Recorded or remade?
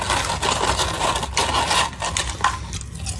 recorded